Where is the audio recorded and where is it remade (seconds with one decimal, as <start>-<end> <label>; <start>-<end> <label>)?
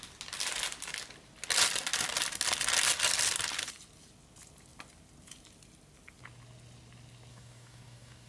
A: 0.0-7.3 recorded; 7.3-8.3 remade